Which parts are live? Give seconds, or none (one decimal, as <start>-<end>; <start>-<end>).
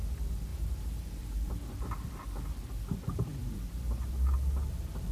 0.0-0.5; 1.5-3.3; 4.1-5.1